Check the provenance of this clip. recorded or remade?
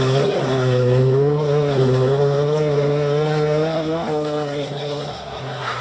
remade